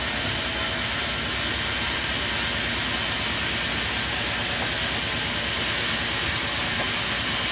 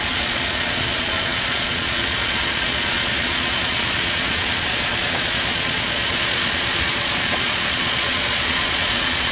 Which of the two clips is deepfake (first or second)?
second